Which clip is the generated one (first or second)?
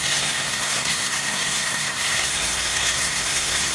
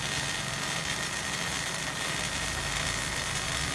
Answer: first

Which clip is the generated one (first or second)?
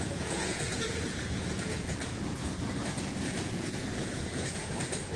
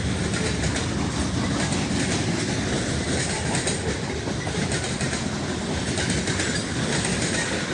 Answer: first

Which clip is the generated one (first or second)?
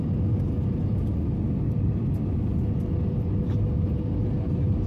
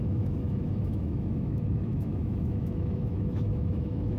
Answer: second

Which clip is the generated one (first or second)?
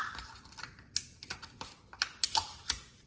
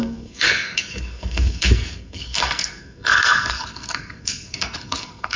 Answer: second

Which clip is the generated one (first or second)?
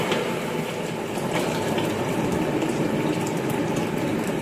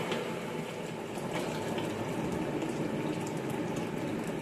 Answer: first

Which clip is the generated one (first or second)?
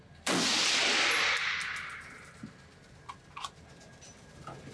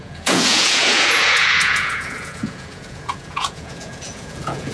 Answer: second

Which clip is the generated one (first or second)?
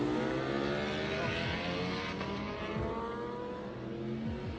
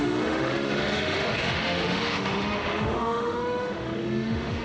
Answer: second